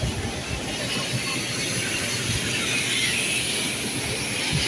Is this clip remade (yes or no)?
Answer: no